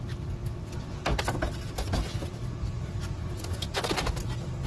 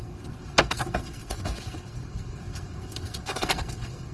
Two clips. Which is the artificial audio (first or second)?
second